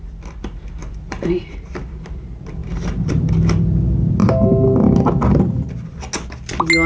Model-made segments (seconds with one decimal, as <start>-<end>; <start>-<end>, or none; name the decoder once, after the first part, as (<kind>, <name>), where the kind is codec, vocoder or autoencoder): 0.8-1.8 (vocoder, BigVGAN v2); 2.6-3.3; 4.2-5.7